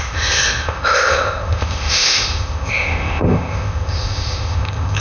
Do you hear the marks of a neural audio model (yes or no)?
yes